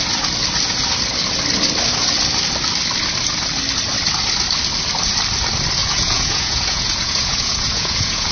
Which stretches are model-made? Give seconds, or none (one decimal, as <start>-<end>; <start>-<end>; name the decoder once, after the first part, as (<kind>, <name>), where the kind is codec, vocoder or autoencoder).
5.8-8.3 (vocoder, Vocos)